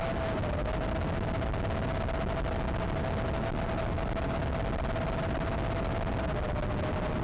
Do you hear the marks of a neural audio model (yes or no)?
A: no